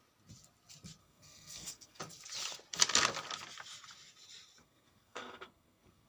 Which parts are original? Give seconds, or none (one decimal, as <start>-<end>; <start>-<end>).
0.0-1.0; 2.0-4.6